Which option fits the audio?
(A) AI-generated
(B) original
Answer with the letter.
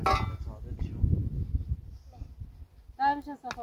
B